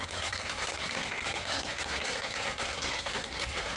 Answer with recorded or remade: remade